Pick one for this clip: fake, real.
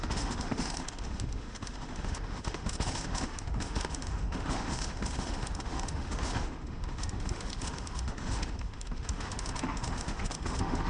fake